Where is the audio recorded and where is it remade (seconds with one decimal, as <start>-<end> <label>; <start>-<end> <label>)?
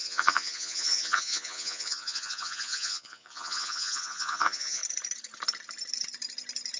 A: 0.0-4.8 remade; 4.8-6.8 recorded